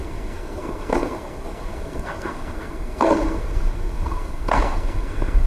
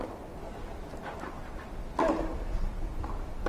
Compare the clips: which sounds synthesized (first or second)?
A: first